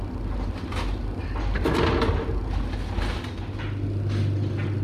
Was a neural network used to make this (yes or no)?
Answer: no